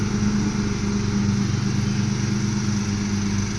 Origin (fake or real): real